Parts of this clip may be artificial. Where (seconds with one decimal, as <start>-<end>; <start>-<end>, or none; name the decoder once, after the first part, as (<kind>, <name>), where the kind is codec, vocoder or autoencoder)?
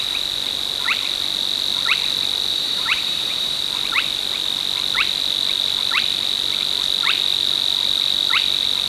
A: 2.5-3.6 (vocoder, BigVGAN v2)